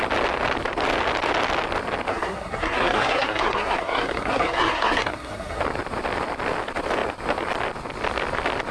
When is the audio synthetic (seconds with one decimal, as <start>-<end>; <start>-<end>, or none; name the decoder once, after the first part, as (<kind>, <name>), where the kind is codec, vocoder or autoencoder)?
2.1-5.6 (codec, SNAC)